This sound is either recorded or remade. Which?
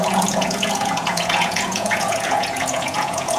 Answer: remade